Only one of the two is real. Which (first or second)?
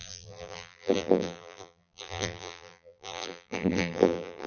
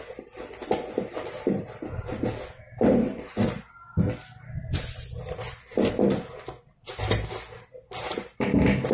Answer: second